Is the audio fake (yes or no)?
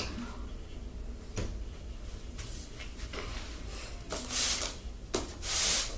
no